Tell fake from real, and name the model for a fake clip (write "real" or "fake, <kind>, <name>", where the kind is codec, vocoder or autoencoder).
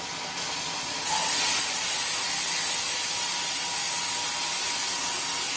real